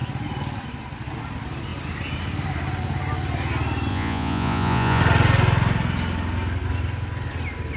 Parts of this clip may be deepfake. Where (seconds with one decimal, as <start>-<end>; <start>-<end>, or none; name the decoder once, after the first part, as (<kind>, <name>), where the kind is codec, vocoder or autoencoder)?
3.9-5.0 (vocoder, Vocos)